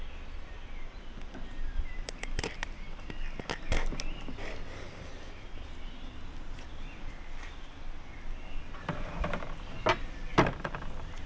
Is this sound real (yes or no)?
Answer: yes